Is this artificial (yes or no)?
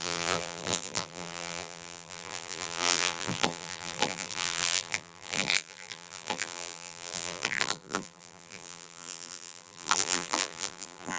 yes